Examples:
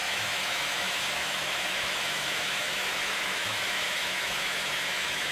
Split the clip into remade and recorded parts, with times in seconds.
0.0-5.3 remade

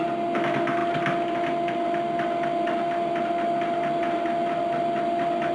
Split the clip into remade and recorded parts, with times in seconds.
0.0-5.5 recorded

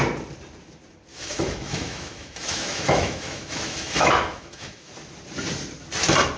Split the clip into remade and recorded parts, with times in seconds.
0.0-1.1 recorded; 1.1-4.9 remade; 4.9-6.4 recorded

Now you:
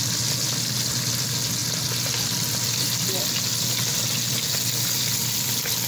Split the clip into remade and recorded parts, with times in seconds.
0.0-5.9 recorded

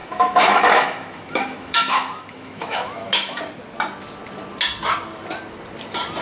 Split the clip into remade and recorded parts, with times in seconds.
0.0-3.4 remade; 3.4-6.2 recorded

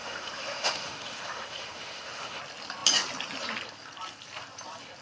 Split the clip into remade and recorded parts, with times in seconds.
0.0-2.4 remade; 2.4-5.0 recorded

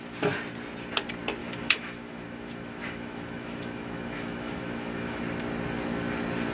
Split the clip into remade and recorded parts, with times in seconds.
0.0-1.4 recorded; 1.4-5.2 remade; 5.2-6.5 recorded

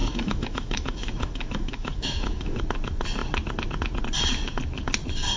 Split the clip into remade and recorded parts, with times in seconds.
0.0-2.6 remade; 2.6-5.4 recorded